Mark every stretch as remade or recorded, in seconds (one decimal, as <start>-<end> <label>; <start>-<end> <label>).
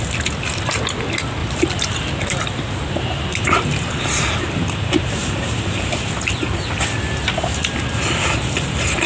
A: 0.0-1.4 recorded; 1.4-5.9 remade; 5.9-9.1 recorded